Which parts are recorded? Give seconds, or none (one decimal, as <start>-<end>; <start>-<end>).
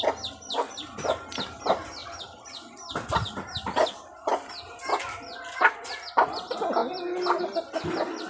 0.0-2.0; 4.2-8.3